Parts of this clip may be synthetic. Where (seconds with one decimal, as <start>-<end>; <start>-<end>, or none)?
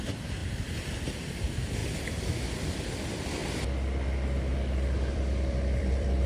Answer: 0.0-0.4; 1.0-3.4; 5.1-6.3